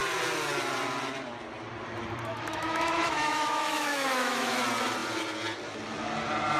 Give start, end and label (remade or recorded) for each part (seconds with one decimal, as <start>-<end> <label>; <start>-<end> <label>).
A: 0.0-2.3 recorded; 2.3-4.6 remade; 4.6-6.6 recorded